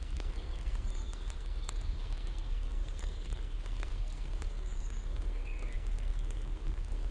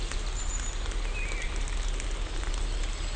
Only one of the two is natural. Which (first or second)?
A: second